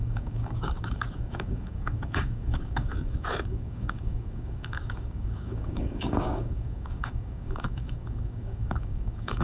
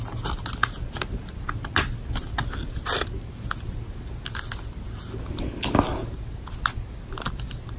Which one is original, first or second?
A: second